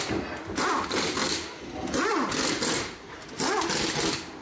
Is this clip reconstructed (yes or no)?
no